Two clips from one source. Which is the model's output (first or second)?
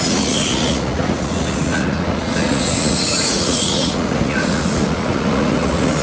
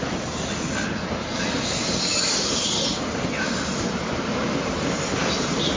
first